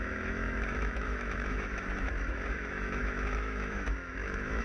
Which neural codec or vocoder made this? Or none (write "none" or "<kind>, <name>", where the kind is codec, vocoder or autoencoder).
autoencoder, DAC-VAE